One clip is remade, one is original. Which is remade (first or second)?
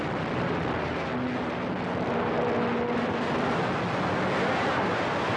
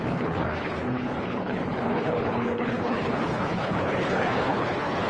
second